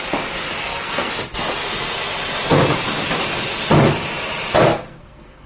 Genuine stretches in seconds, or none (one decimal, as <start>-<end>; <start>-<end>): 0.0-0.6; 1.1-4.7